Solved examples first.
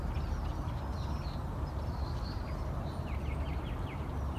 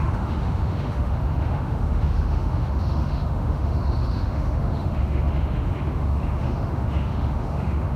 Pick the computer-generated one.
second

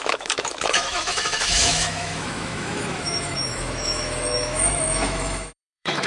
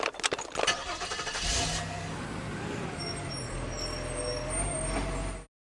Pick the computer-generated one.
first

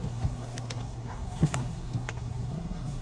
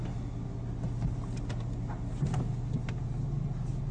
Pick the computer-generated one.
first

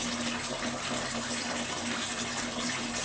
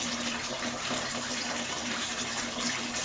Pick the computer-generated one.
second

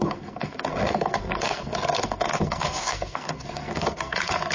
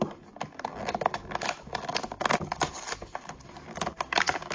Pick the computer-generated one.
first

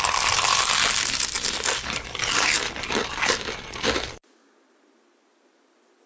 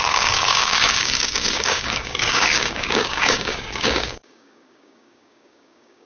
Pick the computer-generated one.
second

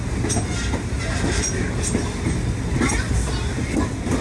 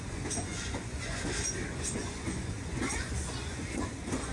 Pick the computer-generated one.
second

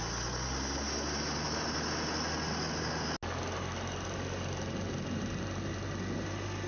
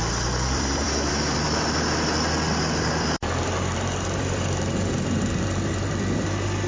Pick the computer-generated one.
second